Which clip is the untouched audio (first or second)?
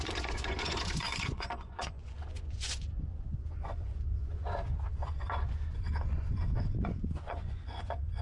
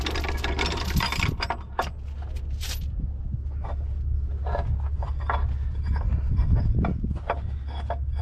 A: second